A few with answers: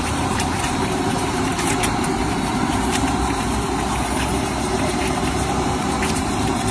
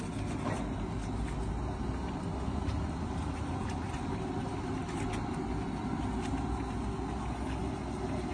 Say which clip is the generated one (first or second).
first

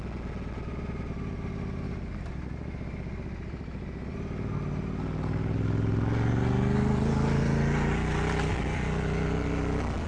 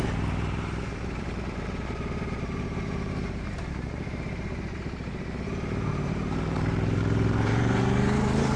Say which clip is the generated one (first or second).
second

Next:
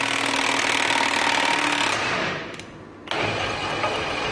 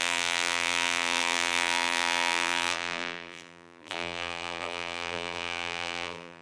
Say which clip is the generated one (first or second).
second